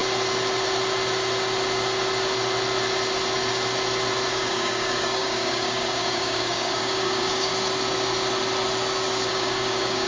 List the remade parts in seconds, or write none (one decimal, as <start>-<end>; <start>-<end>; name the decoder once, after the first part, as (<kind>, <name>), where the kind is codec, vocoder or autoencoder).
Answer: 4.3-7.5 (codec, DAC); 9.3-10.1